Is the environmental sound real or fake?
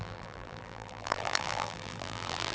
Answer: fake